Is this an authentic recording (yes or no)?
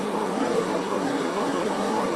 no